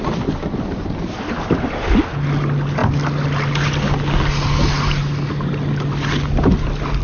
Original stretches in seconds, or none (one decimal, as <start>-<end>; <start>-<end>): 0.0-7.0